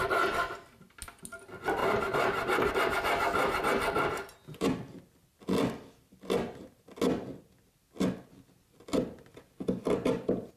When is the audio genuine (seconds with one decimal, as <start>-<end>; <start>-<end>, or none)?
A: 0.0-1.8; 2.7-10.6